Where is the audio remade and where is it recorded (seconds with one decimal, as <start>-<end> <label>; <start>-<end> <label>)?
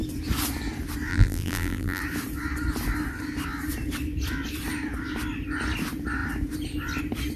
0.0-1.1 recorded; 1.1-2.0 remade; 2.0-7.4 recorded